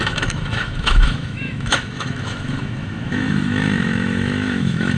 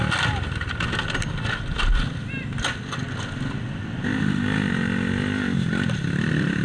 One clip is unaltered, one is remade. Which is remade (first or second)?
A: first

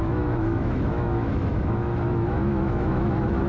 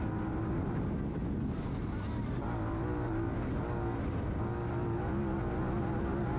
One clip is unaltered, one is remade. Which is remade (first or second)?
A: first